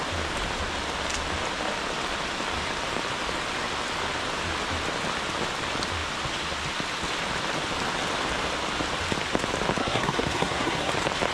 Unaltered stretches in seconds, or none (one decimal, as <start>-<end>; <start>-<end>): 0.0-9.8; 10.9-11.3